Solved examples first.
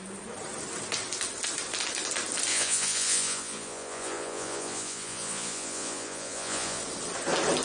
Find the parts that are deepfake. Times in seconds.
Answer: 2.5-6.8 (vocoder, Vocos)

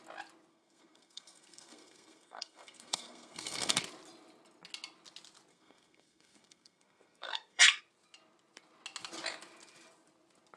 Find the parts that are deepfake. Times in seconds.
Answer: 0.5-3.8 (codec, SNAC); 5.5-7.8